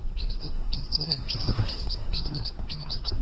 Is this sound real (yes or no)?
no